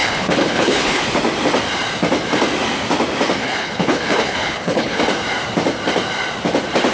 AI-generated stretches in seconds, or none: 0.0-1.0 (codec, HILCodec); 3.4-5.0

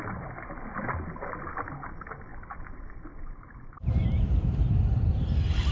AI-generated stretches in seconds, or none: 2.3-5.7 (vocoder, BigVGAN v2)